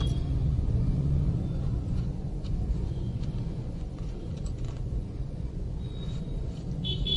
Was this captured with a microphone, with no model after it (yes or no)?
no